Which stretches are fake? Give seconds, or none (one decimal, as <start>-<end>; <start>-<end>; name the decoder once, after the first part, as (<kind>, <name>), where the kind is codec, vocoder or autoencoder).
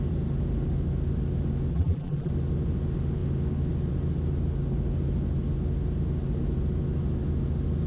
1.7-2.3 (vocoder, BigVGAN v2)